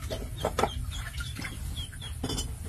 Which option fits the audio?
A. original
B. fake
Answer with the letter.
A